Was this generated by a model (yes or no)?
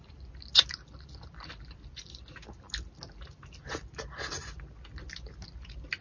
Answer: no